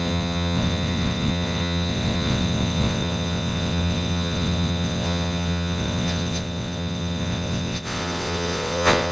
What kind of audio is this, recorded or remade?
remade